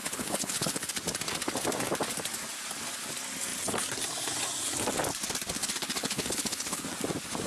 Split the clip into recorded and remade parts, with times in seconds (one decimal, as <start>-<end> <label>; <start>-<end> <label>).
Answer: 0.0-0.9 remade; 0.9-6.0 recorded; 6.0-6.8 remade; 6.8-7.5 recorded